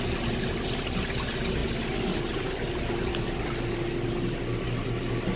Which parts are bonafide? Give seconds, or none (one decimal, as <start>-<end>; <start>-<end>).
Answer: 0.0-5.4